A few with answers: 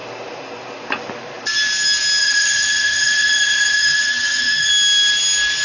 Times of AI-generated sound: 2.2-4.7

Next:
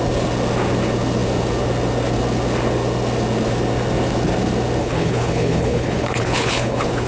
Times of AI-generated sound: 4.8-7.1

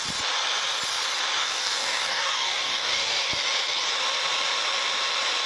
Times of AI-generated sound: 1.4-3.3

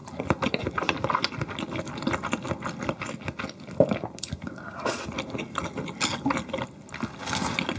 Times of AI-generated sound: none